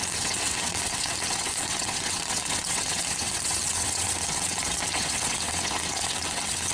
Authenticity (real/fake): fake